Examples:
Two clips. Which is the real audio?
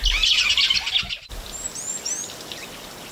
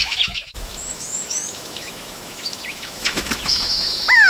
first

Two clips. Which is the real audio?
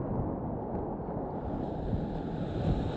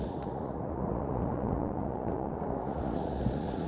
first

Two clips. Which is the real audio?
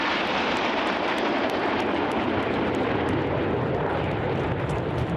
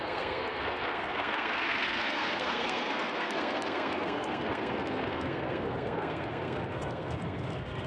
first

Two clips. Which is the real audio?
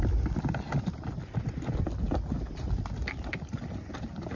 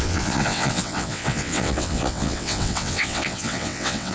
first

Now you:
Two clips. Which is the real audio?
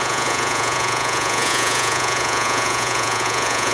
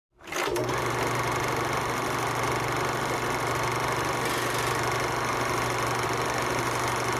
second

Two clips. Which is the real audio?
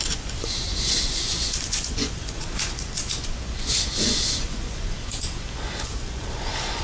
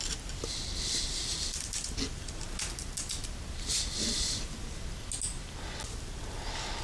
second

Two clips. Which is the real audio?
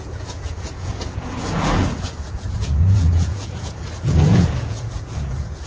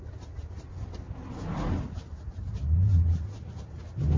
second